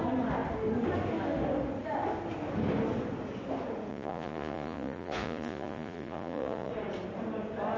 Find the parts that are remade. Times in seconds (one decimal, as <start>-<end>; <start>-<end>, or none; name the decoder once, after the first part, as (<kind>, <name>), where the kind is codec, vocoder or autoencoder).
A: 3.9-6.7 (vocoder, Vocos)